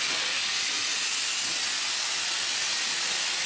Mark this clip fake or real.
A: real